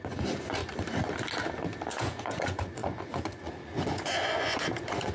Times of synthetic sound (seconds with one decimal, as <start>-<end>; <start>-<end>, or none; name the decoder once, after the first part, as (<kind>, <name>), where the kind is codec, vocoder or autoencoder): 0.0-0.6 (vocoder, Vocos); 1.9-5.1